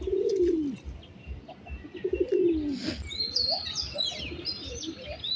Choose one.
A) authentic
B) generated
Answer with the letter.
A